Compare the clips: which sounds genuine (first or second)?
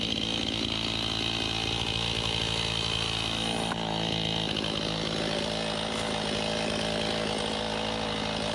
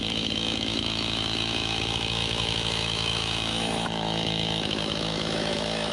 first